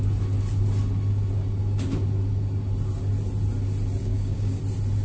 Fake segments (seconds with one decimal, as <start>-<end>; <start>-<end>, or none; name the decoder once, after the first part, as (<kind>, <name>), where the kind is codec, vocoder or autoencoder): 4.0-4.6 (codec, DAC)